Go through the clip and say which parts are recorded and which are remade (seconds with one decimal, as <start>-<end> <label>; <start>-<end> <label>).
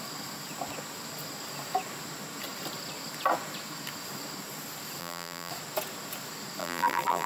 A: 0.0-5.0 recorded; 5.0-5.5 remade; 5.5-6.6 recorded; 6.6-7.3 remade